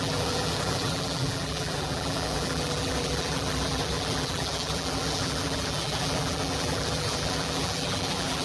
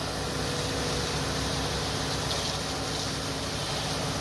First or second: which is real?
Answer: second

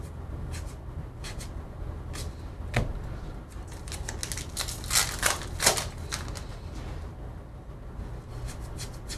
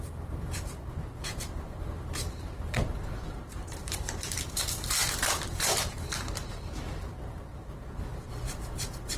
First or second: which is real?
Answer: first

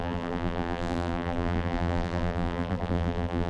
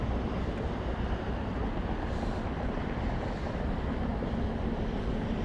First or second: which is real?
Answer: second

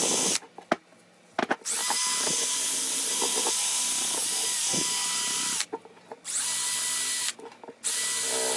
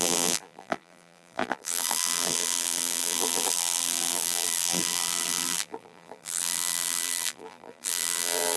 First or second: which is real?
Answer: first